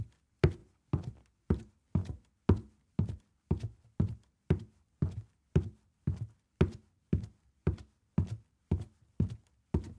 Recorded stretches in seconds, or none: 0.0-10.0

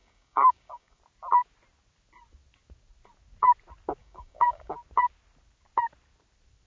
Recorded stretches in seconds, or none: 1.0-4.0; 4.7-6.7

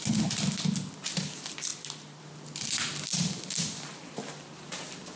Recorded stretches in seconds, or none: 0.0-5.2